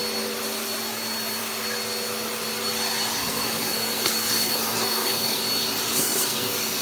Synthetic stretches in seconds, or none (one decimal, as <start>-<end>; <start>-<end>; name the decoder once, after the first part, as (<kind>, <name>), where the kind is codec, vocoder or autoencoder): 3.2-5.4 (codec, SNAC); 5.9-6.8